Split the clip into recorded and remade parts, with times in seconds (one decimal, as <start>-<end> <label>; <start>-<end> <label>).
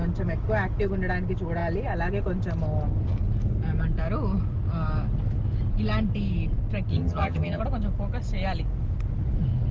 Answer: 0.0-6.9 recorded; 6.9-7.6 remade; 7.6-9.7 recorded